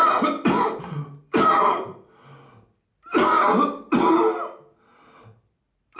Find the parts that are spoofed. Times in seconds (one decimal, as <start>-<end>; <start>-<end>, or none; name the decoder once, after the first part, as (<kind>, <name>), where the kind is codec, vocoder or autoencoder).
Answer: 0.8-1.9 (vocoder, BigVGAN v2); 5.4-6.0